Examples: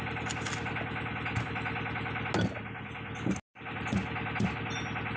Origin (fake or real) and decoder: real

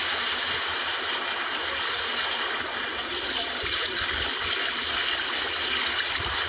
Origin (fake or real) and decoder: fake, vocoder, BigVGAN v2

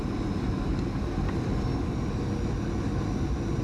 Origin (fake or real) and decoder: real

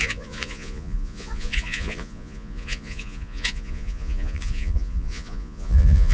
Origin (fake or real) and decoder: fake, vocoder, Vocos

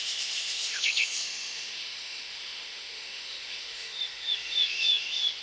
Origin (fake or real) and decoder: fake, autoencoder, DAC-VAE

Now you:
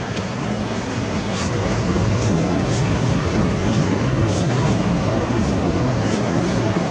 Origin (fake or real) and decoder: fake, codec, SNAC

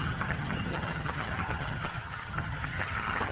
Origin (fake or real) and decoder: fake, vocoder, HiFi-GAN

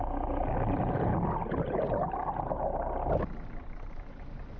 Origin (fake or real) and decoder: fake, vocoder, BigVGAN v2